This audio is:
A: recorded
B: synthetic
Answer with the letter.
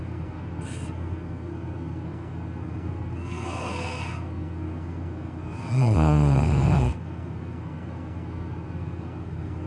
B